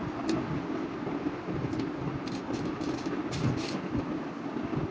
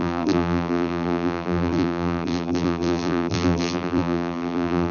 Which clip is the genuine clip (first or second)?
first